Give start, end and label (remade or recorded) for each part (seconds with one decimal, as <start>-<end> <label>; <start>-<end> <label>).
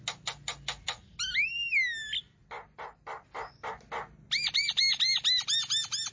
0.0-6.1 recorded